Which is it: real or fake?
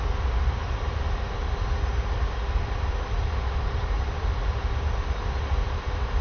real